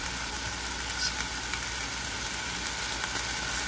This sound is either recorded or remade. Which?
recorded